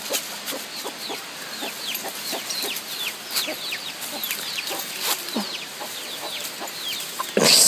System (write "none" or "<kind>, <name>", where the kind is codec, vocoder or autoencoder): none